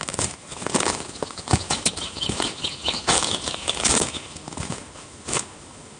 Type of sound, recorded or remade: remade